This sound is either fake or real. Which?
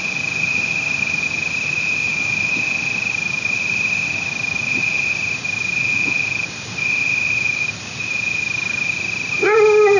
real